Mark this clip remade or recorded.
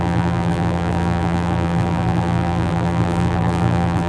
remade